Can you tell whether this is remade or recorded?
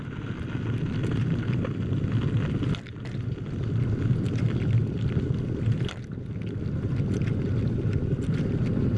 recorded